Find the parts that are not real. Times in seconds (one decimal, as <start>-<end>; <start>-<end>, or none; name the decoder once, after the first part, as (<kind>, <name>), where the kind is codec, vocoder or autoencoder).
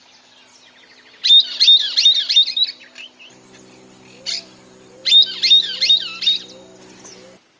none